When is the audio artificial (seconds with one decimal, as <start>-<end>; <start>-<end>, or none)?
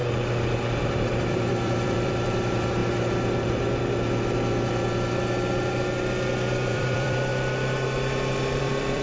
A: 0.8-2.8; 6.7-7.3; 8.6-9.0